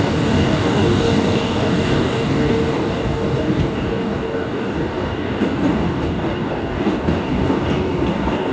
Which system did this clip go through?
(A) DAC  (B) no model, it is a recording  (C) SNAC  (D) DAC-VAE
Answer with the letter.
A